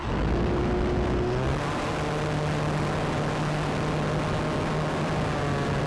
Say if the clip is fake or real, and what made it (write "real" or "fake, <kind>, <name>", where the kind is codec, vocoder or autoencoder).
real